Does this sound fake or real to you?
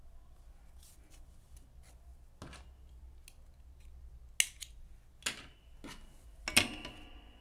real